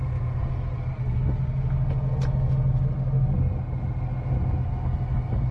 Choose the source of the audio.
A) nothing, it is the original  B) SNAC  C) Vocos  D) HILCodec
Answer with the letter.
A